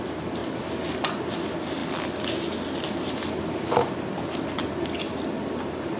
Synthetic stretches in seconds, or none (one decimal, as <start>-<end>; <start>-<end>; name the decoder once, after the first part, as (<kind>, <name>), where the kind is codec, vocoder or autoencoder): none